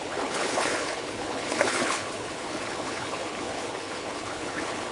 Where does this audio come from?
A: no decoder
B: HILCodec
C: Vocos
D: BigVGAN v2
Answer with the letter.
B